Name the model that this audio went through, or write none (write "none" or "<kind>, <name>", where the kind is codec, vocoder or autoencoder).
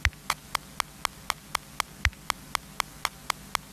none